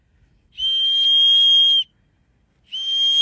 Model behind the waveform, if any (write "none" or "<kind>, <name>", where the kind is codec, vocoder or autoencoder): none